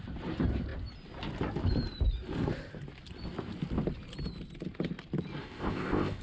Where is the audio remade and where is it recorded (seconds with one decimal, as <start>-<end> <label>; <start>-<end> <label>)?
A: 0.0-5.4 recorded; 5.4-6.2 remade